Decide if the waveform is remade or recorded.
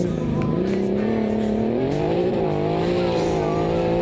recorded